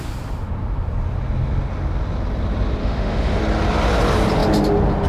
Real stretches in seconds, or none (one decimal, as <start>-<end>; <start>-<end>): 0.0-2.8; 3.4-5.1